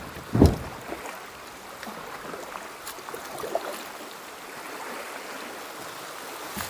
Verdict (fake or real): real